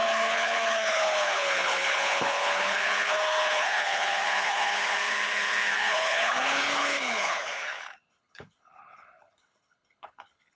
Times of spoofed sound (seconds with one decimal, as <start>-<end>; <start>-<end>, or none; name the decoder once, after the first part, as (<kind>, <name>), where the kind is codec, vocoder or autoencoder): 0.0-10.6 (codec, HILCodec)